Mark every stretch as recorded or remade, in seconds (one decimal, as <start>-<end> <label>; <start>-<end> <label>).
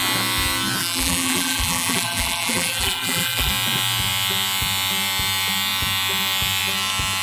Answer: 0.0-0.8 recorded; 0.8-3.5 remade; 3.5-7.2 recorded